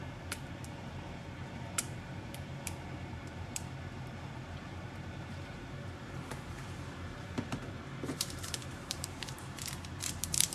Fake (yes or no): yes